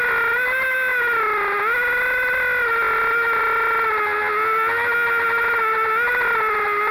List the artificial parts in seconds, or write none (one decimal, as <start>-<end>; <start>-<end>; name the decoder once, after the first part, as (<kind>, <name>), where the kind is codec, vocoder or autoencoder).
none